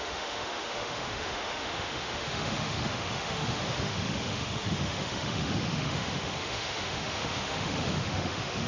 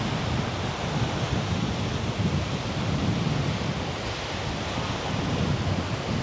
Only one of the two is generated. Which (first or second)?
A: first